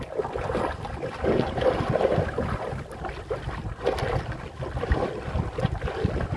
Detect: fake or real real